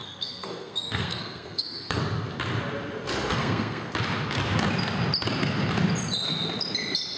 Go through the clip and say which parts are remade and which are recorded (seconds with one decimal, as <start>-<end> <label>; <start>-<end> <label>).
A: 0.0-2.0 remade; 2.0-3.3 recorded; 3.3-3.9 remade; 3.9-7.2 recorded